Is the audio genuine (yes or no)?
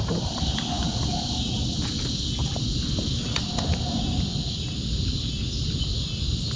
yes